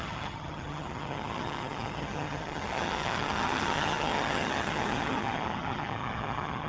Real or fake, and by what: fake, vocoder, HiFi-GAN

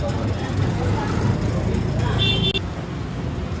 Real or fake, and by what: real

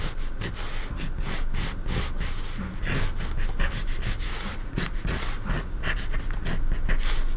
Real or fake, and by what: real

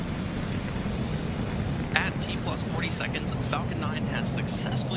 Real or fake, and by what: real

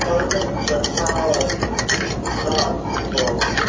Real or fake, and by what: real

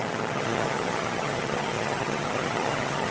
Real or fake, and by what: fake, vocoder, HiFi-GAN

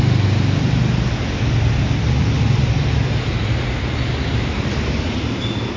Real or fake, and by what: real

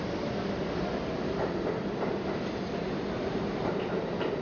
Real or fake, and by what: real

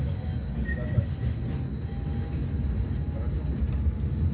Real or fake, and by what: real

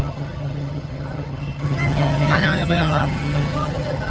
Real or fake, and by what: fake, vocoder, HiFi-GAN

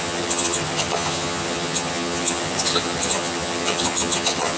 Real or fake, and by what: fake, vocoder, HiFi-GAN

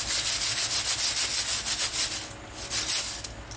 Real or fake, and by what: real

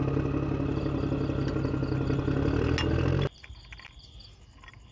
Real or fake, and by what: real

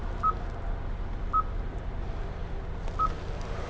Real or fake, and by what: real